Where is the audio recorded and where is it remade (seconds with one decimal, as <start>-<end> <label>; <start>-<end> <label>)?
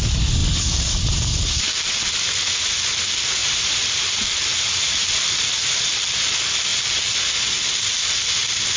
0.0-3.4 recorded; 3.4-4.0 remade; 4.0-4.5 recorded; 4.5-5.9 remade; 5.9-8.8 recorded